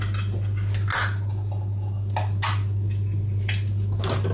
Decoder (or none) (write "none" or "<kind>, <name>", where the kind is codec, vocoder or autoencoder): none